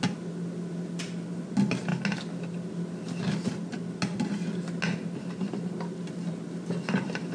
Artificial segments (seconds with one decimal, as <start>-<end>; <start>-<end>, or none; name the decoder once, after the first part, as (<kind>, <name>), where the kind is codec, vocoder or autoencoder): none